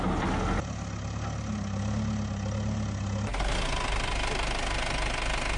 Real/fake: real